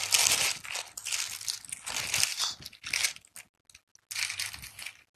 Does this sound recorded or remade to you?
recorded